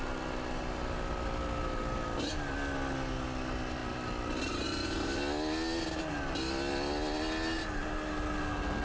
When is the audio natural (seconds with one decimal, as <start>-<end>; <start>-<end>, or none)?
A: 0.0-8.8